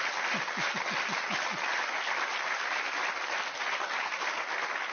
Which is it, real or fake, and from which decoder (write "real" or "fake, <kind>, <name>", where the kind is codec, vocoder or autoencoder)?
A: real